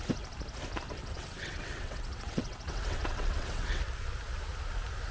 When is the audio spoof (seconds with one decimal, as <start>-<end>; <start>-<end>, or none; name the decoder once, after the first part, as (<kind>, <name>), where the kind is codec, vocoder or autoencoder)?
1.0-3.8 (vocoder, WaveNeXt)